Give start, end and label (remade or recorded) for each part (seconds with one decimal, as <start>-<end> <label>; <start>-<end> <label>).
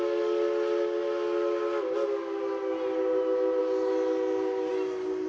0.0-5.3 recorded